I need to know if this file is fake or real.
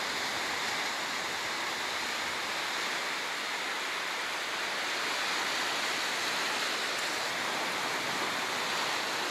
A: real